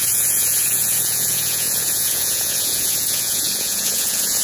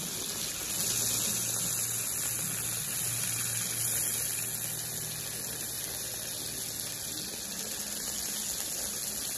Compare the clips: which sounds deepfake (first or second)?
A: first